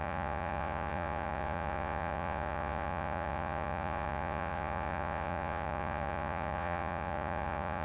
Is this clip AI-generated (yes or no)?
yes